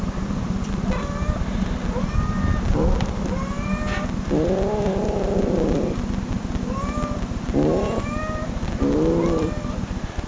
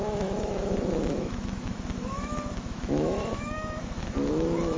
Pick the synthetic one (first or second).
second